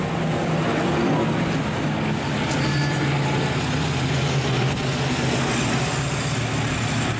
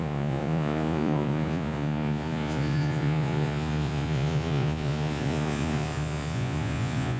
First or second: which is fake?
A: second